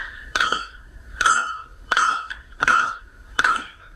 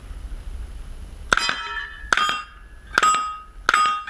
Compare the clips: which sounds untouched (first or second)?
second